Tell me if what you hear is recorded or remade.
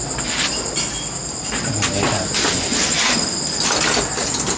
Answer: recorded